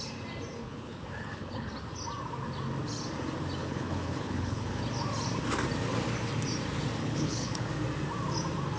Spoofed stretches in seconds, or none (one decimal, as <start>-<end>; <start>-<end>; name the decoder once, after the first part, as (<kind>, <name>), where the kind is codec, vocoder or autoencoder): 0.6-1.7 (codec, HILCodec); 3.6-4.8; 7.0-7.7